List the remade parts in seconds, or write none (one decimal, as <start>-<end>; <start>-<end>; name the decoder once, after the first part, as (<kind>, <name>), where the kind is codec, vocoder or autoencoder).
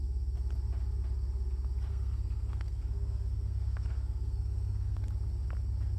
1.9-5.0 (codec, SNAC)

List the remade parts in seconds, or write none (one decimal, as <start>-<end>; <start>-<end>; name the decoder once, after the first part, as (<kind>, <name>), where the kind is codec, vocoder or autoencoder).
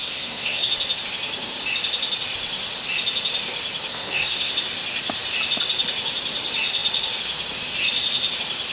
0.0-0.7 (codec, SNAC); 3.9-4.5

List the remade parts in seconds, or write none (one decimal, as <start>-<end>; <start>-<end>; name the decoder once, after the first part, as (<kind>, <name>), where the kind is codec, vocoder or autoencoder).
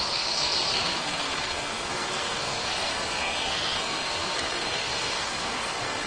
0.0-6.1 (codec, SNAC)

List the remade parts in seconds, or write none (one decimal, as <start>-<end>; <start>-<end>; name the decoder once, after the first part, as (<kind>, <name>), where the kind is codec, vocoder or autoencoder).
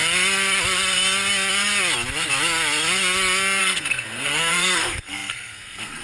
3.6-6.0 (codec, SNAC)